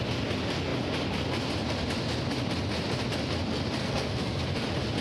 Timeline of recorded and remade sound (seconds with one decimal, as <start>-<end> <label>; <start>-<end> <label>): 0.0-3.8 recorded; 3.8-4.4 remade; 4.4-5.0 recorded